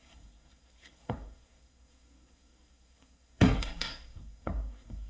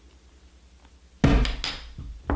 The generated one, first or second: first